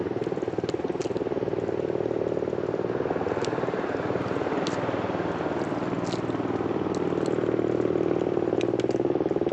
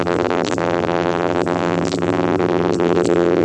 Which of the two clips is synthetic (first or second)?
second